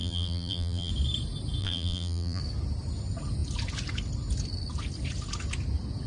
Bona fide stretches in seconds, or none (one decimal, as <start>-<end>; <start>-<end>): 0.9-1.6; 2.4-6.1

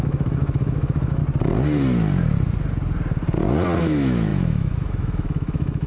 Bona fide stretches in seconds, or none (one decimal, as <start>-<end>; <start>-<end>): 1.2-3.8